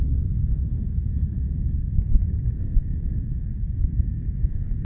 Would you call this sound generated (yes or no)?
yes